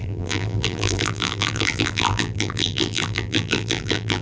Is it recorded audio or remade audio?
remade